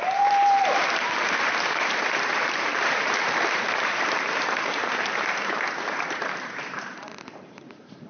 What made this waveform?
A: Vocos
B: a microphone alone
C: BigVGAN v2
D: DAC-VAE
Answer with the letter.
C